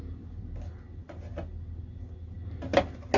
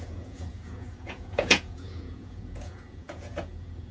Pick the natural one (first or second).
first